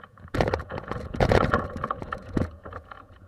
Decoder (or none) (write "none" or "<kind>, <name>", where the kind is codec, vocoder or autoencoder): vocoder, Vocos